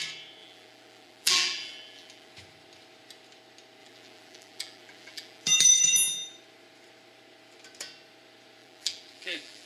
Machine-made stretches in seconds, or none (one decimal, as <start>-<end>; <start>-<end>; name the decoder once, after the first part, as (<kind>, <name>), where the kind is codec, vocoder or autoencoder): 0.4-2.3 (vocoder, BigVGAN v2); 3.8-5.8; 8.6-9.7